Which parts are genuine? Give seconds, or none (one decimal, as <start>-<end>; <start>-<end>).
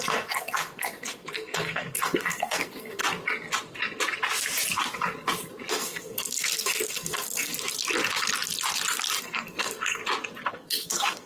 3.0-5.7; 7.5-9.2; 10.0-10.5